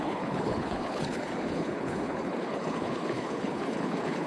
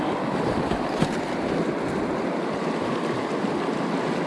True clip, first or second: second